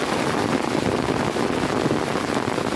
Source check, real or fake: real